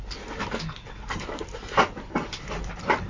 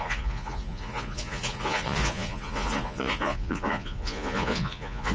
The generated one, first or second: second